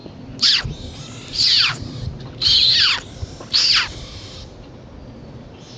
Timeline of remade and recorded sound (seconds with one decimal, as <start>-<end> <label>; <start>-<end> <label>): 0.0-5.8 recorded